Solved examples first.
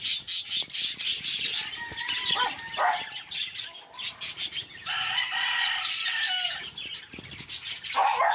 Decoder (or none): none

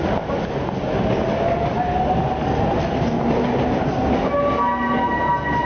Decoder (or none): none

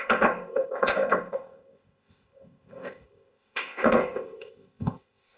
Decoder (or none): codec, ZipCodec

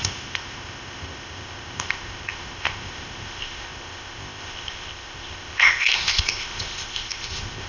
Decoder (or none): codec, ZipCodec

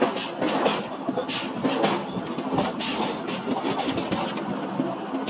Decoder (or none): none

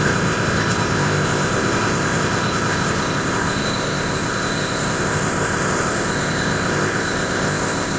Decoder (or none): codec, ZipCodec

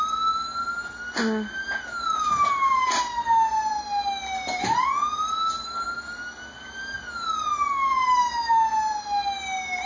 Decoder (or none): none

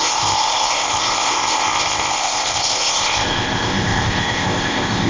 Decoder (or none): codec, ZipCodec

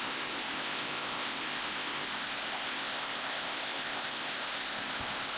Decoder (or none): codec, ZipCodec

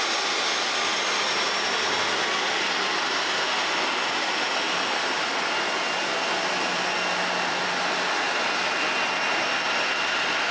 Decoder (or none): none